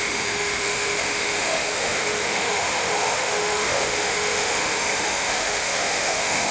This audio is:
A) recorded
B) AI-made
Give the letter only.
B